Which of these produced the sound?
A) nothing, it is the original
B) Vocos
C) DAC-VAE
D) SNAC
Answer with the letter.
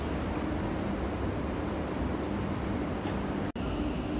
A